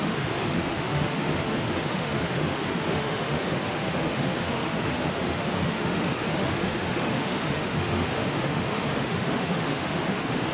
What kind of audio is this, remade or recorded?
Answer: remade